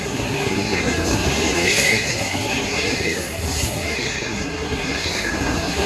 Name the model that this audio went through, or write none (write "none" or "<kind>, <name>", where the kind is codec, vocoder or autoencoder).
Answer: codec, SNAC